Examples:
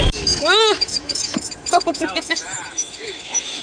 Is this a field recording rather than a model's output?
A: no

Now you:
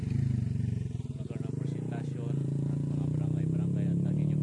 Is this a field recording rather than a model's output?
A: yes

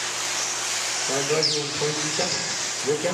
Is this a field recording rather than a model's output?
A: yes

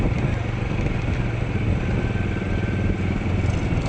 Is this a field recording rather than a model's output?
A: yes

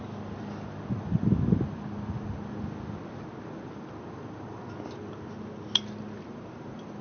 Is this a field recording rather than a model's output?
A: yes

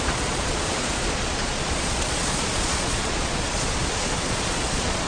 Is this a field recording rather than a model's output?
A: no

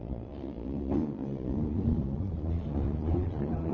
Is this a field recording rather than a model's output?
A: no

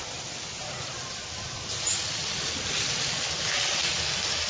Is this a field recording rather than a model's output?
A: yes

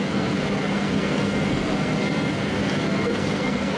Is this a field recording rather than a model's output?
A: no